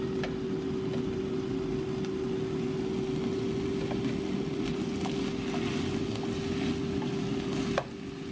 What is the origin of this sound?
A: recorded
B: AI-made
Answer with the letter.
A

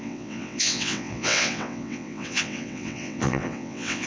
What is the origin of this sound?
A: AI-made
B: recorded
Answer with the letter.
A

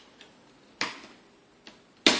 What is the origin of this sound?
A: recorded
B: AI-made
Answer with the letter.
A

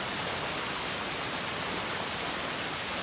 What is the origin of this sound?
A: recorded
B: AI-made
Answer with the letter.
A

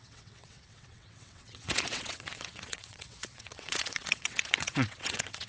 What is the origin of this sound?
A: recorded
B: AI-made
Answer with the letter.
B